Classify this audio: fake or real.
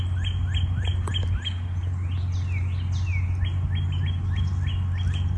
real